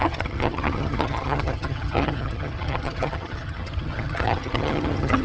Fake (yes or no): yes